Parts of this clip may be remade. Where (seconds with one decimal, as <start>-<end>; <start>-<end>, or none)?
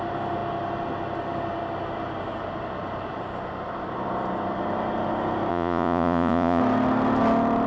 5.5-6.6